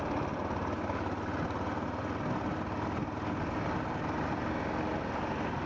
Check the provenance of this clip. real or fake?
real